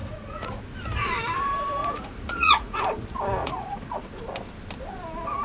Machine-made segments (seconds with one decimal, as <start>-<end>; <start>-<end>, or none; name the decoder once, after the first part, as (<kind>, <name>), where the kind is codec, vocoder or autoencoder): 0.0-0.6 (vocoder, Vocos); 1.8-2.8; 3.4-4.2